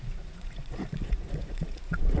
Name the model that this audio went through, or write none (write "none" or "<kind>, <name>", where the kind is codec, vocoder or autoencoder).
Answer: vocoder, Vocos